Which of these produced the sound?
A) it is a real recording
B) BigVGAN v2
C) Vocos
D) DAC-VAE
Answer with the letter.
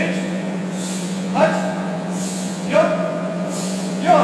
C